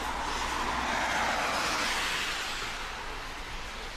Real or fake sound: real